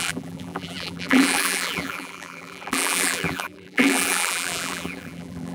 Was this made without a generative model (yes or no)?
no